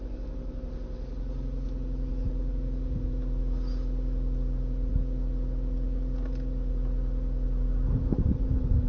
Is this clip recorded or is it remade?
recorded